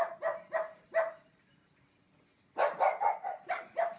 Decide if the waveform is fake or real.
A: real